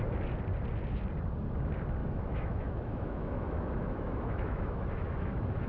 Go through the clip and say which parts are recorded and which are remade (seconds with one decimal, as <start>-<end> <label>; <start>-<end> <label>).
0.0-2.0 recorded; 2.0-5.7 remade